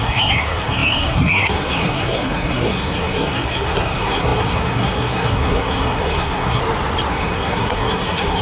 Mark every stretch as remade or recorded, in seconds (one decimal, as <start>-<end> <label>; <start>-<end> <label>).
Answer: 0.0-6.6 remade; 6.6-7.1 recorded; 7.1-8.4 remade

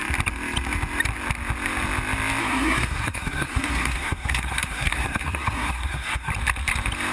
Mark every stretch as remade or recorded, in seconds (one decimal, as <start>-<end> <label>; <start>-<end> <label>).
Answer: 0.0-2.4 recorded; 2.4-6.3 remade; 6.3-7.1 recorded

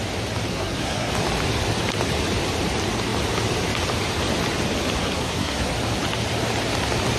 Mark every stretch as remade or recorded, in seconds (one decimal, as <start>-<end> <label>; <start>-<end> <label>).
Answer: 0.0-0.5 recorded; 0.5-1.1 remade; 1.1-5.0 recorded; 5.0-5.7 remade; 5.7-7.2 recorded

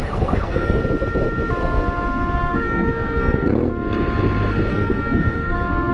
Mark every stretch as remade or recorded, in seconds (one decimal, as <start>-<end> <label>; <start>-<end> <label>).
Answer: 0.0-0.8 remade; 0.8-1.6 recorded; 1.6-3.7 remade; 3.7-4.7 recorded; 4.7-5.9 remade

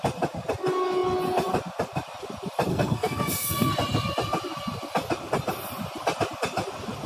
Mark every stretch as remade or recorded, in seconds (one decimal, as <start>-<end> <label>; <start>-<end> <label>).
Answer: 0.0-2.7 recorded; 2.7-3.7 remade; 3.7-7.1 recorded

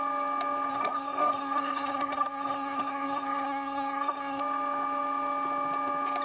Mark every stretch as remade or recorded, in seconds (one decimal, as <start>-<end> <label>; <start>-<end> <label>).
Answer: 0.0-0.7 recorded; 0.7-4.4 remade; 4.4-6.2 recorded

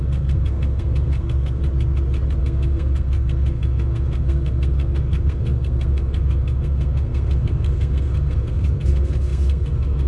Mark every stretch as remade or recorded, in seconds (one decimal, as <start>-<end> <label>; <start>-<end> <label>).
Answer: 0.0-1.6 remade; 1.6-2.4 recorded; 2.4-10.1 remade

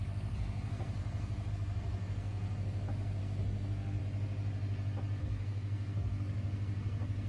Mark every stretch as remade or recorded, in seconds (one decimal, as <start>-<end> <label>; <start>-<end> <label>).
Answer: 0.0-4.0 remade; 4.0-5.2 recorded; 5.2-7.3 remade